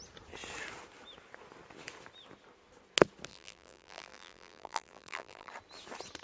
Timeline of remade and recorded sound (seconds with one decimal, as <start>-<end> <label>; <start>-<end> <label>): 0.0-3.3 recorded; 3.3-5.5 remade; 5.5-6.2 recorded